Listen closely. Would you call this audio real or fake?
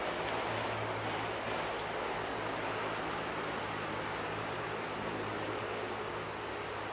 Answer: real